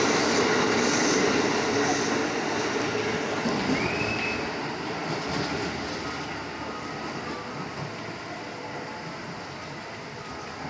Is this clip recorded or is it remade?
recorded